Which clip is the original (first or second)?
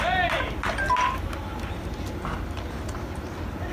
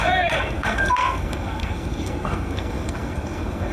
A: first